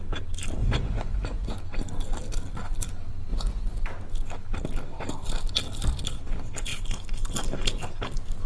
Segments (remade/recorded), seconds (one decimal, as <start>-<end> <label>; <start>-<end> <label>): 0.0-0.6 recorded; 0.6-1.5 remade; 1.5-3.3 recorded; 3.3-3.8 remade; 3.8-8.5 recorded